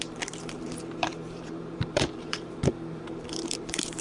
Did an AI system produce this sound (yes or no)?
yes